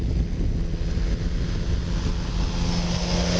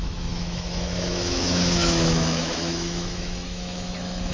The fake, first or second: second